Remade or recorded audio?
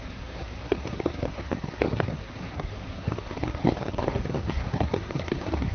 remade